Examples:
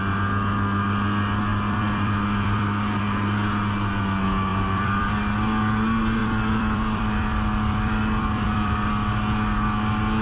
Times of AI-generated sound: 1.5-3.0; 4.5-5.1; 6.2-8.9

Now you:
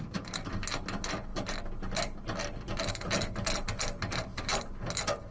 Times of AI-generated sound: none

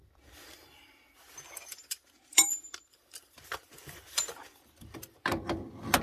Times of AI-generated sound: 1.7-5.2

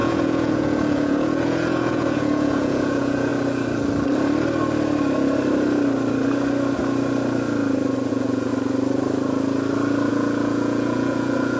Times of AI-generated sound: 0.0-3.3; 8.1-8.5; 10.1-11.6

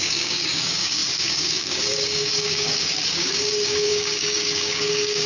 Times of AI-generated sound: 0.0-5.3

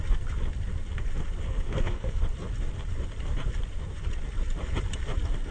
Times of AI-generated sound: 1.4-2.2

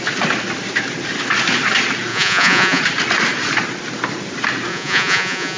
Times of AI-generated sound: 2.1-2.8; 4.7-5.6